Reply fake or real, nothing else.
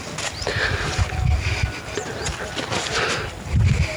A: real